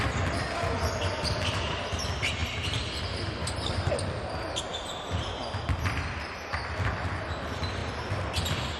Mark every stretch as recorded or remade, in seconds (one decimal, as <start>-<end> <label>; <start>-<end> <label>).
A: 0.0-8.8 recorded